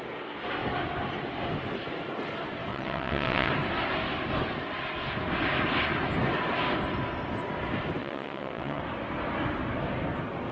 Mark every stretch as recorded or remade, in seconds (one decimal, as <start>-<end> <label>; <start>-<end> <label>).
0.0-2.7 recorded; 2.7-3.5 remade; 3.5-8.0 recorded; 8.0-8.8 remade; 8.8-10.5 recorded